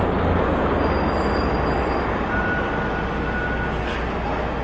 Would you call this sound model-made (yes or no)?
no